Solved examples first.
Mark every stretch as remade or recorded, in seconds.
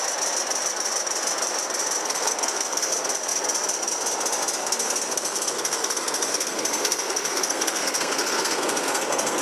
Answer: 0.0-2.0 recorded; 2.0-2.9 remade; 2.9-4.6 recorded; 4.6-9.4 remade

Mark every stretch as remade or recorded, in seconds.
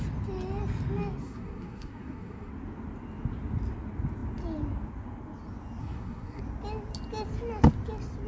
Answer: 0.0-1.2 recorded; 1.2-2.5 remade; 2.5-5.8 recorded; 5.8-6.4 remade; 6.4-8.3 recorded